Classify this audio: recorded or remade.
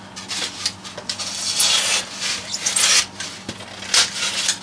recorded